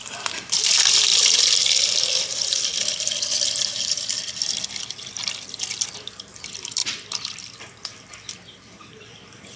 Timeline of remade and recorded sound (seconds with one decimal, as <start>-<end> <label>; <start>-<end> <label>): 0.0-9.6 remade